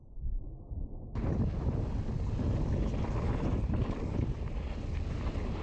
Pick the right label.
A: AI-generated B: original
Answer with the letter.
B